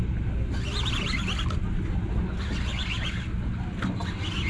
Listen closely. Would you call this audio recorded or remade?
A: recorded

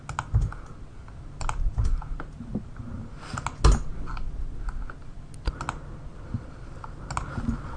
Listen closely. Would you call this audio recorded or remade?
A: recorded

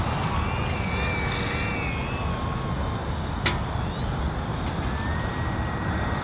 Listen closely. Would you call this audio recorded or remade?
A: recorded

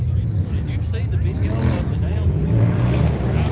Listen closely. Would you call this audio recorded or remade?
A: recorded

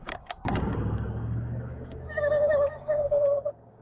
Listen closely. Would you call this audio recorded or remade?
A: remade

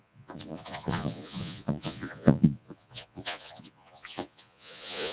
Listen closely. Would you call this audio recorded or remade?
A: remade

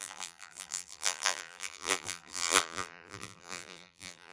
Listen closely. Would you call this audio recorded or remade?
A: remade